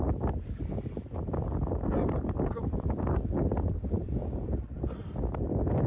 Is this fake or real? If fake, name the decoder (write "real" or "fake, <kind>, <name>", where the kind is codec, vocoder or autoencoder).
real